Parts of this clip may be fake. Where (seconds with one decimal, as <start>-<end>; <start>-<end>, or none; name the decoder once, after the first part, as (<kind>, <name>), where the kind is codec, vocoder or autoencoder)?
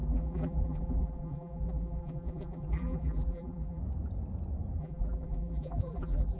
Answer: 0.0-3.8 (vocoder, BigVGAN v2); 4.8-6.4